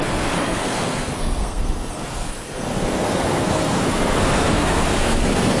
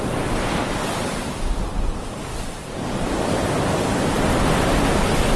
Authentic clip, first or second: second